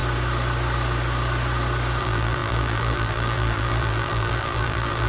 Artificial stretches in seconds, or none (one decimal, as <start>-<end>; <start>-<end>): 2.0-5.1